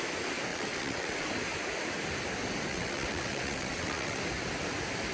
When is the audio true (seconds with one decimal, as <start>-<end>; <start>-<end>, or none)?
0.0-0.5; 1.3-2.7; 4.2-5.1